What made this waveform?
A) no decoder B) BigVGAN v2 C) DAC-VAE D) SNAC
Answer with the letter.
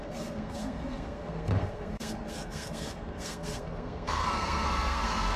D